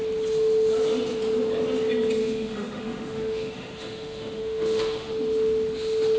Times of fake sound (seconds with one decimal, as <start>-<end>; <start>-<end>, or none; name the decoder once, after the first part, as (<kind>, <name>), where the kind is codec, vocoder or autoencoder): 2.2-5.1 (autoencoder, DAC-VAE)